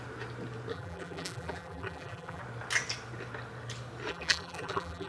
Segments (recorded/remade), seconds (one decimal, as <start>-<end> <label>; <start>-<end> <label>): 0.0-0.7 recorded; 0.7-2.4 remade; 2.4-4.1 recorded; 4.1-5.1 remade